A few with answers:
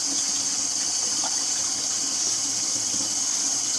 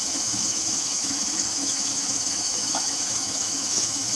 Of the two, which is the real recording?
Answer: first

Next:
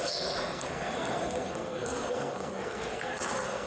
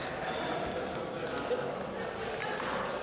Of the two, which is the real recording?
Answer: second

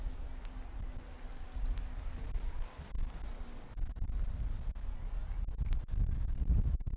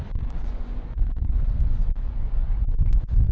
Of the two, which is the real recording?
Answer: first